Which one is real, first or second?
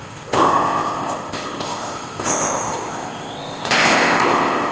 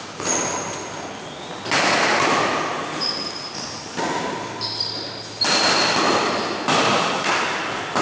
second